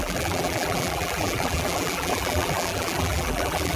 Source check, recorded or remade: remade